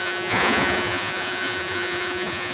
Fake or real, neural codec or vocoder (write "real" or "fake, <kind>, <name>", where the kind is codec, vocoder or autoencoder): fake, vocoder, Vocos